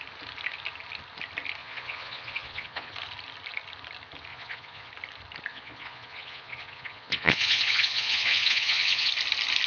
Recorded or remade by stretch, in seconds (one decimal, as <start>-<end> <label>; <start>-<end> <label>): 0.0-1.6 recorded; 1.6-2.9 remade; 2.9-4.3 recorded; 4.3-4.9 remade; 4.9-5.5 recorded; 5.5-9.1 remade; 9.1-9.7 recorded